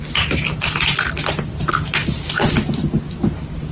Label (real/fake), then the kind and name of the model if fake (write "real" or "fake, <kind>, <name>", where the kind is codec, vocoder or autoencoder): real